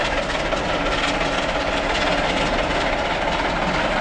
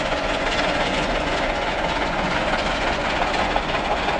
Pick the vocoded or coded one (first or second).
second